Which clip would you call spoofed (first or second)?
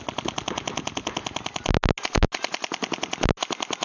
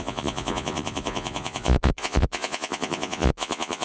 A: second